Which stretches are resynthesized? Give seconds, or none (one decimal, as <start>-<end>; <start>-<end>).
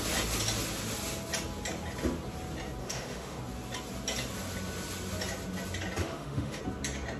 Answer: 2.8-3.4; 6.0-6.6